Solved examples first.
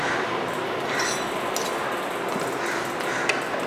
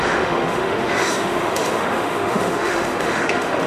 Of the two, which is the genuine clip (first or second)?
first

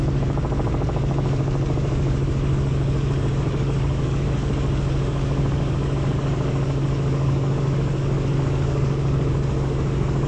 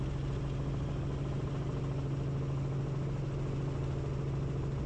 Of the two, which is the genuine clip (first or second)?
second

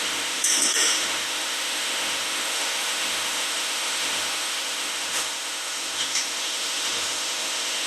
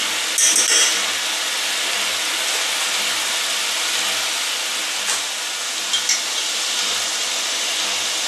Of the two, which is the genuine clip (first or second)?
second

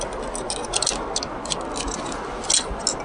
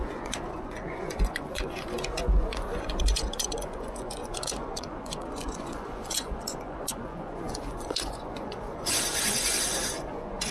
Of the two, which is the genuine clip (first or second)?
first